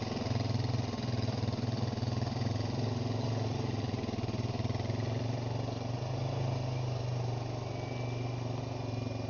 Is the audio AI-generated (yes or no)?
no